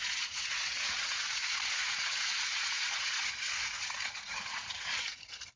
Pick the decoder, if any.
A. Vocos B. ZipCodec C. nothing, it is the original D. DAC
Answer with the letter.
A